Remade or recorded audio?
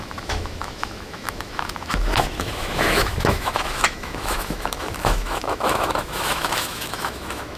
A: remade